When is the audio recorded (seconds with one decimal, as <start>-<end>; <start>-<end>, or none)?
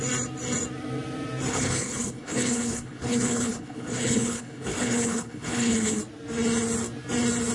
0.0-1.5; 6.0-7.5